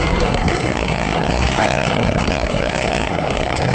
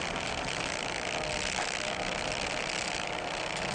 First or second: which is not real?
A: first